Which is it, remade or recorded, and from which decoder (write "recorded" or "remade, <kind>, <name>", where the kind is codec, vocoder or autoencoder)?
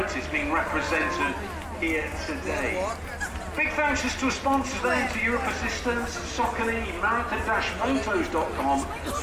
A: recorded